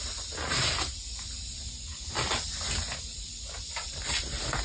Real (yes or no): yes